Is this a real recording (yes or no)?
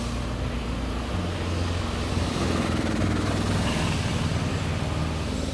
yes